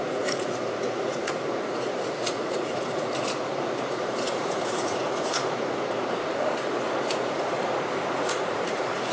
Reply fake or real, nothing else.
fake